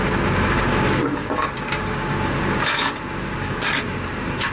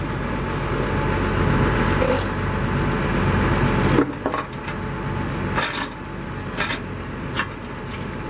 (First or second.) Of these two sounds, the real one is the second